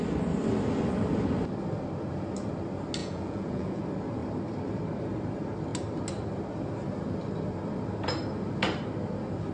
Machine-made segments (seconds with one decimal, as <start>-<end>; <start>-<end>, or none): 3.0-3.8